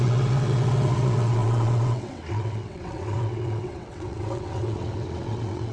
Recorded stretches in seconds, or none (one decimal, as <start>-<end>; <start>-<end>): none